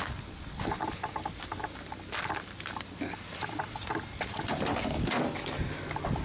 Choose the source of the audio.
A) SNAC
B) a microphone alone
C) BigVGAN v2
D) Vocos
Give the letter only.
B